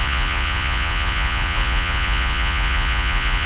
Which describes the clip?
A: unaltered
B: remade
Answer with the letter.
B